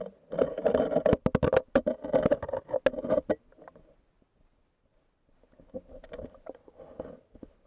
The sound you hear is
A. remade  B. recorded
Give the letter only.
B